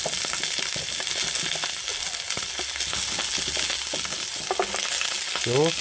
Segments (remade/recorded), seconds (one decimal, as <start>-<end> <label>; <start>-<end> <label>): 0.0-5.8 recorded